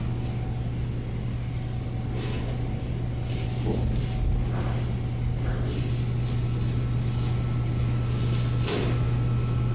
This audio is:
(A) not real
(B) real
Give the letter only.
B